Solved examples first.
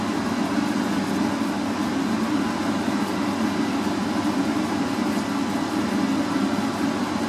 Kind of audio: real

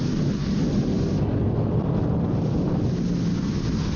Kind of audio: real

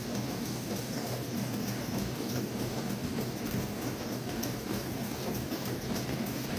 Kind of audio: fake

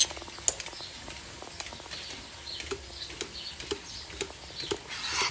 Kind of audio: real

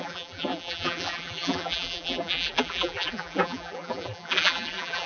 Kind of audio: fake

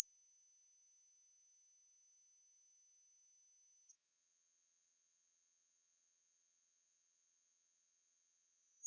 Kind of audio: fake